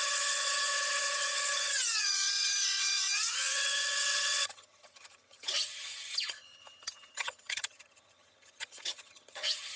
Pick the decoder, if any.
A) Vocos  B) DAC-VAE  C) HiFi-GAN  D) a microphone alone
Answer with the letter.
C